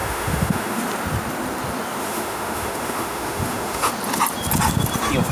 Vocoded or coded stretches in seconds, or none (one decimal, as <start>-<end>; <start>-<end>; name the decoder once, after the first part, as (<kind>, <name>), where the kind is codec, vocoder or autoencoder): 0.0-0.8 (autoencoder, DAC-VAE); 2.0-3.9